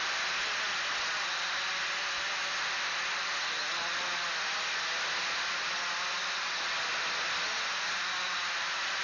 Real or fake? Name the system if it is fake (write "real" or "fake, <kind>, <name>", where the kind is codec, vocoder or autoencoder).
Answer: real